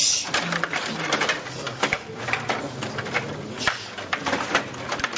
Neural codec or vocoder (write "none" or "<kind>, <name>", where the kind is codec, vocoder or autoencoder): none